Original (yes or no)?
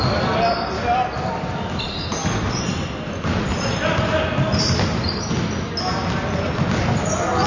yes